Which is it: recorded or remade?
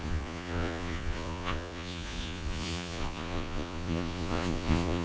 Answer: remade